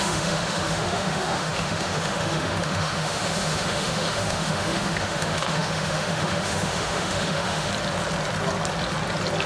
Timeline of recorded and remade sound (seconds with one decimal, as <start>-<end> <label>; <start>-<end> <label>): 0.0-7.7 remade; 7.7-9.5 recorded